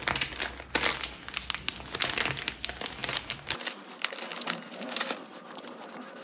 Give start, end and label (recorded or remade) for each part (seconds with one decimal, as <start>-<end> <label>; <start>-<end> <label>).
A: 0.0-3.0 recorded; 3.0-3.9 remade; 3.9-4.3 recorded; 4.3-5.1 remade; 5.1-6.2 recorded